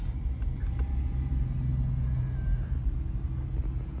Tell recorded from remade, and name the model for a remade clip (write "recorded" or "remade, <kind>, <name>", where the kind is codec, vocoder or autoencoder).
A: recorded